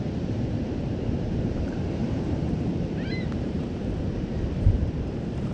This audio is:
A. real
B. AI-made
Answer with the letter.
B